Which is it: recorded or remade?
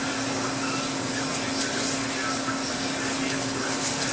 recorded